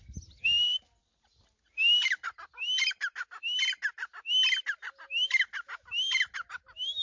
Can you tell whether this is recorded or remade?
recorded